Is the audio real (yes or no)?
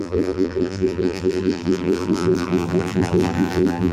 no